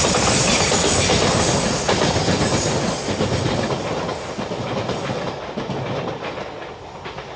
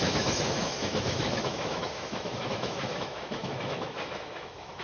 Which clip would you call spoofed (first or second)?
second